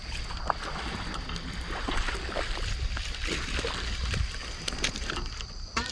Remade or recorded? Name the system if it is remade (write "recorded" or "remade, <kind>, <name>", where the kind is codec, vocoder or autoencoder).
recorded